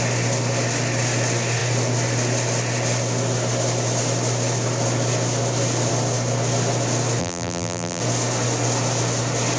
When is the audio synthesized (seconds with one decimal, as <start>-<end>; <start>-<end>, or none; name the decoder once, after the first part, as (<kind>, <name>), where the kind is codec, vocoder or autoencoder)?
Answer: 7.2-8.0 (vocoder, BigVGAN v2)